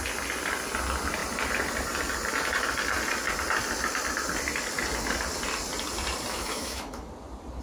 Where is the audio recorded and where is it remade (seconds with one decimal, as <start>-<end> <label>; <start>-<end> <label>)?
0.0-6.3 recorded; 6.3-7.1 remade; 7.1-7.6 recorded